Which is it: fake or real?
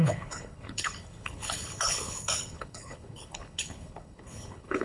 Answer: fake